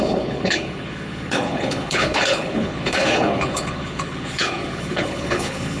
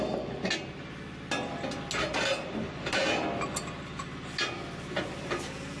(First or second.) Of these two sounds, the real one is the second